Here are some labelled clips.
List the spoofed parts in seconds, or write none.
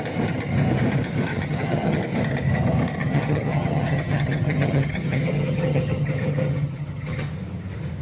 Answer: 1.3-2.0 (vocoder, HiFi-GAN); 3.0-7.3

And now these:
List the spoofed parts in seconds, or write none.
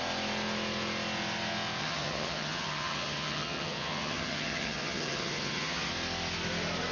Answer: 1.8-5.9 (vocoder, HiFi-GAN)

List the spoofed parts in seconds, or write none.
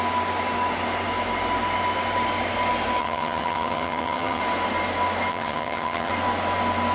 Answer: 3.0-4.4 (vocoder, HiFi-GAN); 5.3-6.1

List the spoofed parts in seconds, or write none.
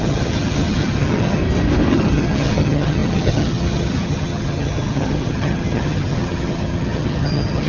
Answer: 0.0-1.4 (vocoder, HiFi-GAN); 1.9-7.7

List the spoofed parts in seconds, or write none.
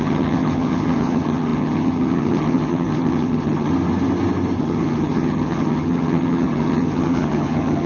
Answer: 0.0-3.7 (vocoder, HiFi-GAN); 4.6-7.9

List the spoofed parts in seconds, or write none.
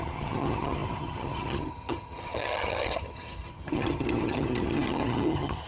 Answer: 0.0-5.7 (vocoder, HiFi-GAN)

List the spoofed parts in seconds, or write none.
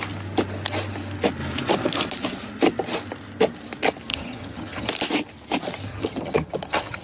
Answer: 4.1-4.9 (vocoder, HiFi-GAN); 5.9-7.0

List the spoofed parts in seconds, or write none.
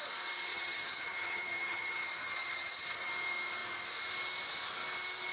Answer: 0.5-3.1 (vocoder, HiFi-GAN)